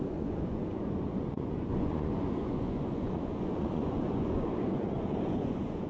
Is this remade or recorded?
remade